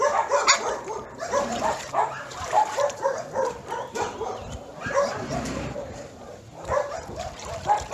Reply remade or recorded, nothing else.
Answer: remade